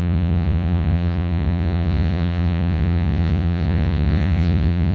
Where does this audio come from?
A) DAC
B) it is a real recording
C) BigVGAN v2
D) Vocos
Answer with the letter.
D